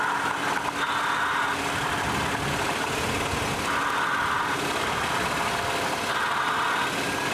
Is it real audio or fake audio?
real